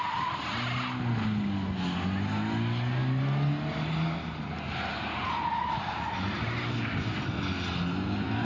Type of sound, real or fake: real